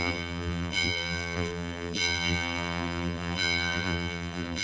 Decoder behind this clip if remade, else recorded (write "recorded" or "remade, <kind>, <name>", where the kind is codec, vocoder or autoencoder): remade, vocoder, BigVGAN v2